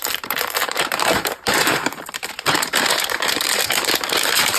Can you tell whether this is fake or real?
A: fake